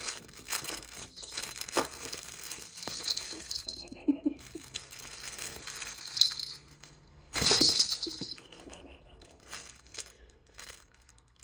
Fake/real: fake